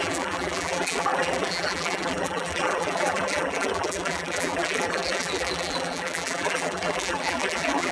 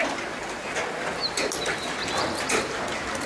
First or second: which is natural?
second